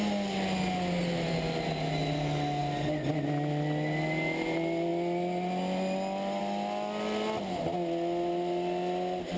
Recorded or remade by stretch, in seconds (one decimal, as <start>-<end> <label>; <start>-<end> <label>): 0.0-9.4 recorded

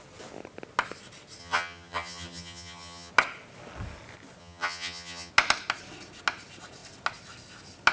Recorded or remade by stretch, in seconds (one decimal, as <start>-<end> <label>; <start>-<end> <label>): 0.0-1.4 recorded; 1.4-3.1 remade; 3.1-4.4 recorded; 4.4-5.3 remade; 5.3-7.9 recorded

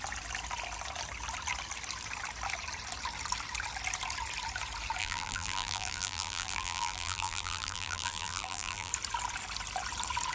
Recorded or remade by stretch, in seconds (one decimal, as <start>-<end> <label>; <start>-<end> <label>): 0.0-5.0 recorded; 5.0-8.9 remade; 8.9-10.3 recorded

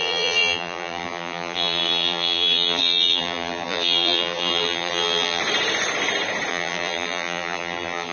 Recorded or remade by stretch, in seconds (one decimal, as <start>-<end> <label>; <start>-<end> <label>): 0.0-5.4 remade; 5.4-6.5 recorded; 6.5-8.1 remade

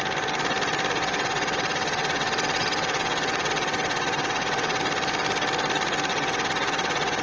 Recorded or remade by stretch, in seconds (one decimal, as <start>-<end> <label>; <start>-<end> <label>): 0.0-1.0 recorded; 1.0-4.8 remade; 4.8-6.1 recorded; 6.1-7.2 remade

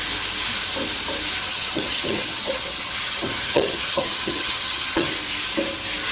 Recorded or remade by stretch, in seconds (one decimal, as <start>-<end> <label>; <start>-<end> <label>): 0.0-1.5 recorded; 1.5-5.1 remade; 5.1-6.1 recorded